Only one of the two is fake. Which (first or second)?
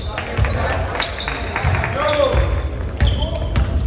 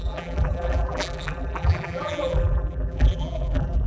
second